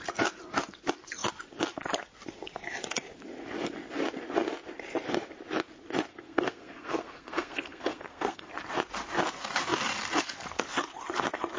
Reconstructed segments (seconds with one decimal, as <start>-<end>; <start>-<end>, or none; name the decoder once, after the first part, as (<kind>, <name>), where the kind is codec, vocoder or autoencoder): 6.1-8.5 (codec, SNAC)